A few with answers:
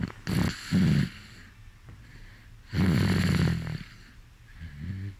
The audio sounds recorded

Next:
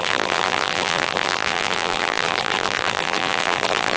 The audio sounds remade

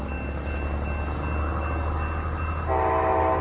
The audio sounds recorded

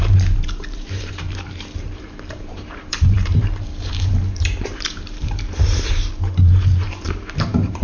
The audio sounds remade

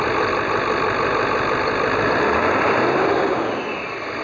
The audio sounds recorded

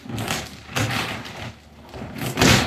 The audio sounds recorded